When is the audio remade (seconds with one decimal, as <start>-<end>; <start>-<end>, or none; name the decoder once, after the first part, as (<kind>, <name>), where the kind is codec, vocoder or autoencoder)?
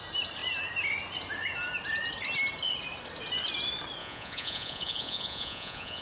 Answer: 4.0-6.0 (vocoder, Vocos)